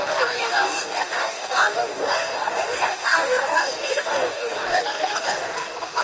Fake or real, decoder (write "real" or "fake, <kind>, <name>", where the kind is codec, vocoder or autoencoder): fake, codec, DAC